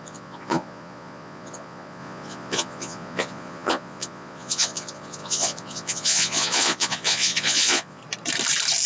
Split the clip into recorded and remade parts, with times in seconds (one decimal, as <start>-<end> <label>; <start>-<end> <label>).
0.0-8.0 remade; 8.0-8.9 recorded